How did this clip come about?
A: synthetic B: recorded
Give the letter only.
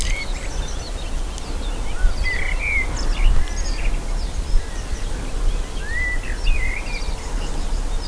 B